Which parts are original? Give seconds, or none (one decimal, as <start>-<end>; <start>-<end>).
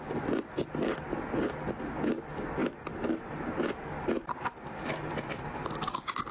0.0-6.3